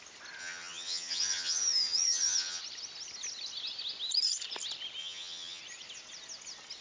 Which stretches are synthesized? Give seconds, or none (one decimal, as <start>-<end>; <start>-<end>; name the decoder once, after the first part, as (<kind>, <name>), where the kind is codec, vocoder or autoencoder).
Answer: 0.4-2.6 (vocoder, HiFi-GAN); 5.0-5.6